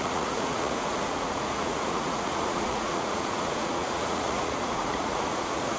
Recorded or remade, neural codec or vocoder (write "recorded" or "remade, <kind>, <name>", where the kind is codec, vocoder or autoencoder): remade, vocoder, Vocos